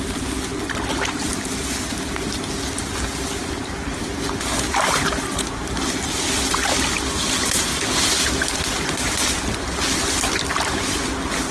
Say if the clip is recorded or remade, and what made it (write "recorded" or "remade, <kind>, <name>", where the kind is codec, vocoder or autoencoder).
recorded